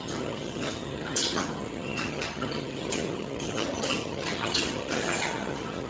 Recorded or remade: remade